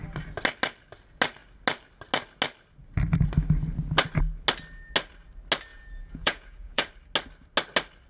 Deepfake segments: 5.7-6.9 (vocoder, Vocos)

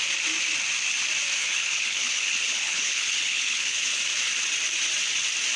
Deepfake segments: 1.4-4.0 (codec, HILCodec)

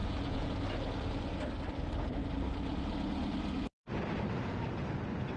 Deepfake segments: 0.0-0.5 (vocoder, Vocos)

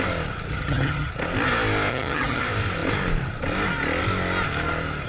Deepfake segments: 0.5-1.1 (vocoder, HiFi-GAN); 1.9-2.4

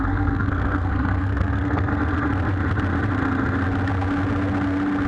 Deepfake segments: 0.0-1.9 (codec, SNAC)